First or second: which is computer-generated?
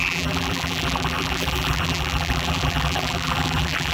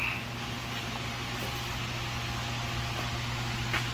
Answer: first